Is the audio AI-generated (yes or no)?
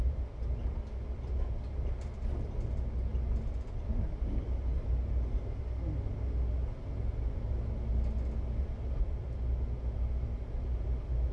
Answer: no